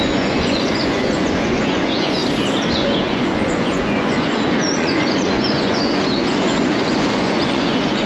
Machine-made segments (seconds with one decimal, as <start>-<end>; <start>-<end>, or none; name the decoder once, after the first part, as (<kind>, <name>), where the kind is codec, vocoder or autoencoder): 0.0-2.2 (vocoder, Vocos); 2.7-8.1